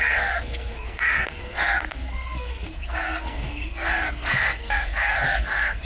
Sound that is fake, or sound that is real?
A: fake